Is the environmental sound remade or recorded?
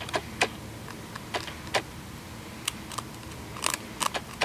recorded